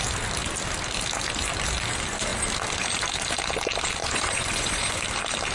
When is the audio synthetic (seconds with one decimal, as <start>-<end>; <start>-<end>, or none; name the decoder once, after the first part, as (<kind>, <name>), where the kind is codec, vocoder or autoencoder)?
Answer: 4.0-5.0 (vocoder, Vocos)